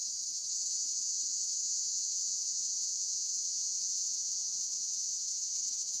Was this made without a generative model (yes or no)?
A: no